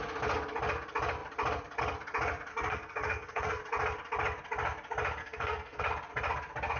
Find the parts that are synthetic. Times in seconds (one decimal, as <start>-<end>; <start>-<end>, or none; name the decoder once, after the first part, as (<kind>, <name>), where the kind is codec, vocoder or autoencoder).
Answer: 2.5-3.6 (codec, SNAC); 5.2-5.8